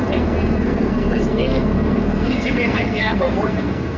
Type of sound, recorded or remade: remade